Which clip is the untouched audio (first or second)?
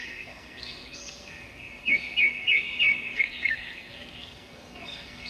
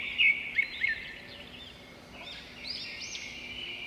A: second